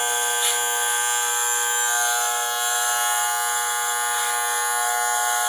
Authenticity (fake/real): real